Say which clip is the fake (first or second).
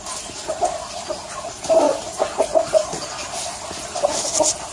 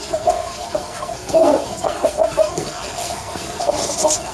second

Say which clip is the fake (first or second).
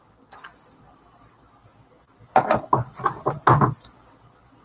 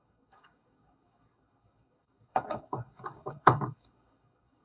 second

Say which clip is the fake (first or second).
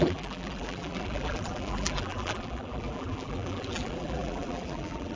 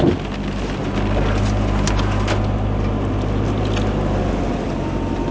first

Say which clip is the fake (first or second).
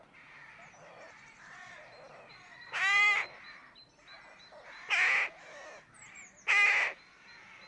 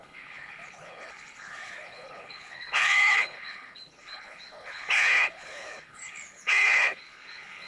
second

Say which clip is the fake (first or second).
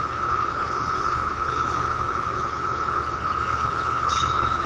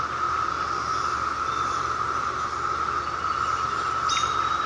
first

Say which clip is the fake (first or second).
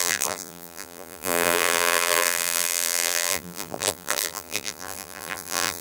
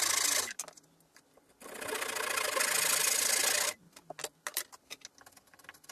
first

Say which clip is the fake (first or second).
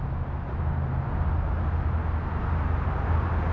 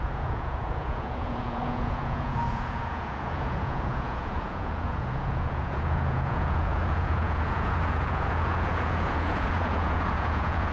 second